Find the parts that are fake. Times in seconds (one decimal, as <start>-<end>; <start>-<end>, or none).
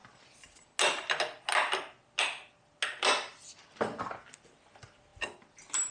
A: none